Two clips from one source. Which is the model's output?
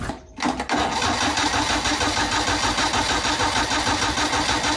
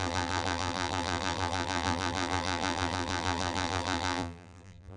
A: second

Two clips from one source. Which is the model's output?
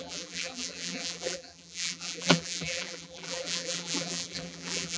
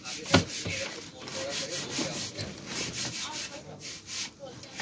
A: first